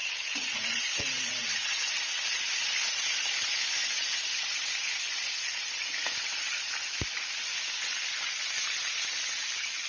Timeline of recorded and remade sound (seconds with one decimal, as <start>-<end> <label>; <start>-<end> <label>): 0.0-2.0 remade; 2.0-9.9 recorded